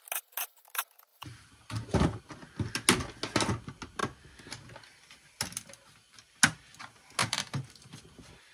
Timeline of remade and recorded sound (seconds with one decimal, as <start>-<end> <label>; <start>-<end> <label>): 0.0-1.1 recorded; 1.1-2.2 remade; 2.2-7.2 recorded; 7.2-8.0 remade; 8.0-8.5 recorded